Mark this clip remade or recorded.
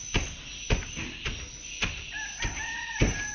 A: recorded